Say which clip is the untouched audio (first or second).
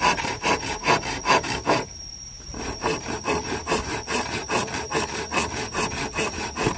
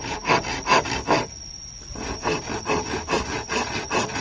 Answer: second